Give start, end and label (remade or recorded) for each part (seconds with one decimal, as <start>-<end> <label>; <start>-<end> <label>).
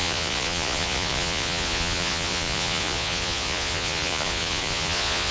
0.0-5.3 remade